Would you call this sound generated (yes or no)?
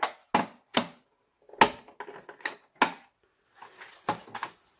no